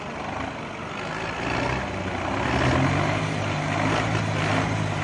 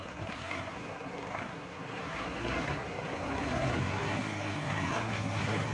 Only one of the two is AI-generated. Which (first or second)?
second